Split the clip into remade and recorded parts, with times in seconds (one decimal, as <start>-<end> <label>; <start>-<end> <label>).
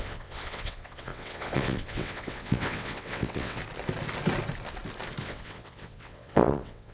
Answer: 0.0-3.6 remade; 3.6-5.2 recorded; 5.2-6.9 remade